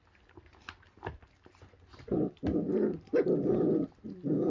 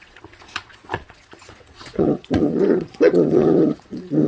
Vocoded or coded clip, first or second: second